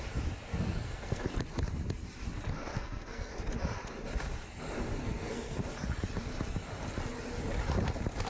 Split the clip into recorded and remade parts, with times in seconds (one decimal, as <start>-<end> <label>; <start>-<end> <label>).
0.0-0.5 recorded; 0.5-1.2 remade; 1.2-2.7 recorded; 2.7-3.3 remade; 3.3-5.0 recorded; 5.0-5.6 remade; 5.6-8.3 recorded